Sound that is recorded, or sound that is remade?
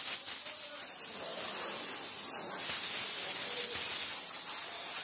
recorded